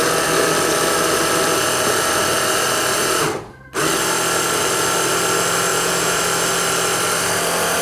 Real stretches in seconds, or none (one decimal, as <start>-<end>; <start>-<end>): 0.0-5.7; 6.2-7.8